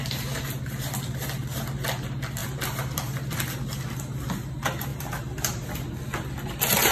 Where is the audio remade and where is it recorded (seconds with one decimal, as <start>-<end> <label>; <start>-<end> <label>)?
0.0-2.4 recorded; 2.4-3.4 remade; 3.4-4.9 recorded; 4.9-5.9 remade; 5.9-6.9 recorded